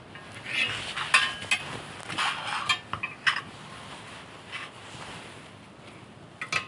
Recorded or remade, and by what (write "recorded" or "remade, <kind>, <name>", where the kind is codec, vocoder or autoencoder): recorded